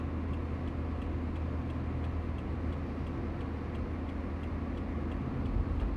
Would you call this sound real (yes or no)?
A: yes